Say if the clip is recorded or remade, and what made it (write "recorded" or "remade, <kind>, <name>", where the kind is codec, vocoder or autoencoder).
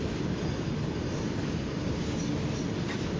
recorded